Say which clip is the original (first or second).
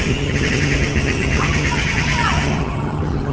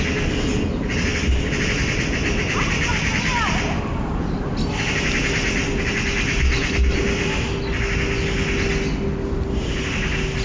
second